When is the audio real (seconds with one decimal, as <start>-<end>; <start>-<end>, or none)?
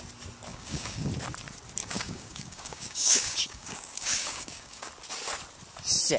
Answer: 0.0-0.5; 1.1-1.8; 4.9-6.2